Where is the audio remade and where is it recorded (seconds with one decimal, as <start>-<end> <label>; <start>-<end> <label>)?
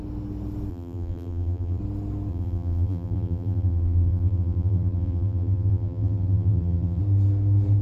0.0-0.7 recorded; 0.7-1.8 remade; 1.8-2.3 recorded; 2.3-7.0 remade; 7.0-7.8 recorded